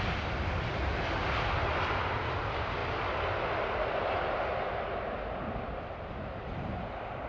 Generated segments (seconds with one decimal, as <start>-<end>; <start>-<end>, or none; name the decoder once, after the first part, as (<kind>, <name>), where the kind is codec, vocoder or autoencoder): none